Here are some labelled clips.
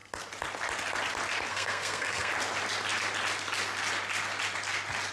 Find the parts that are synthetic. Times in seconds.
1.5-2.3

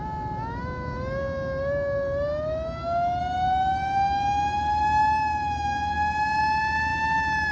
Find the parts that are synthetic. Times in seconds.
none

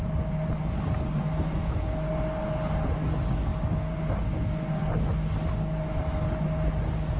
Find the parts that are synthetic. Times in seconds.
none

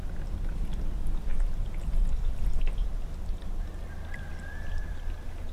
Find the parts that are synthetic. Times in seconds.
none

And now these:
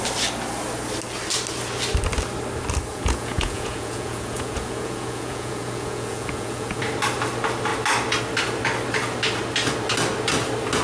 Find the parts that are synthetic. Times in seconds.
2.9-6.8